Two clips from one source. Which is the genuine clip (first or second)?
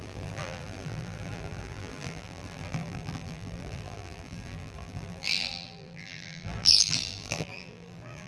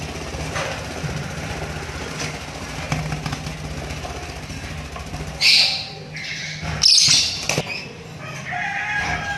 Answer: second